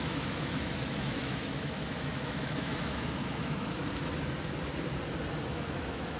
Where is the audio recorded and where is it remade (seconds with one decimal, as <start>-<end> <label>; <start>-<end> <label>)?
0.0-3.8 remade; 3.8-5.5 recorded; 5.5-6.2 remade